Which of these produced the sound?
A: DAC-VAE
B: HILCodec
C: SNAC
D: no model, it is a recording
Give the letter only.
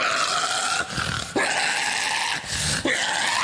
D